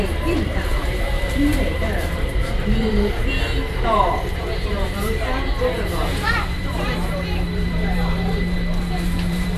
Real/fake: fake